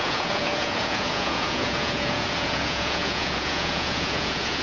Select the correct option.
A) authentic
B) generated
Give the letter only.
B